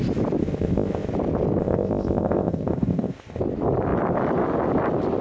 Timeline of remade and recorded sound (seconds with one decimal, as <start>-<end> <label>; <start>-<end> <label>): 0.0-0.4 recorded; 0.4-1.1 remade; 1.1-1.6 recorded; 1.6-3.4 remade; 3.4-5.2 recorded